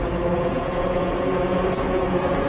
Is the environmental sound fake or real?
fake